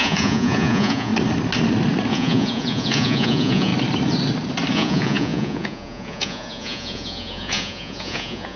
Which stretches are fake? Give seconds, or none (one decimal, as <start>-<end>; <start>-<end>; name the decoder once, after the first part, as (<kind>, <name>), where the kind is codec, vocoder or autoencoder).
0.0-1.1 (vocoder, Vocos); 2.1-3.7; 4.7-8.6